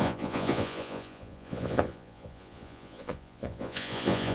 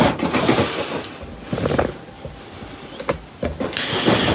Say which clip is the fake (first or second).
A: first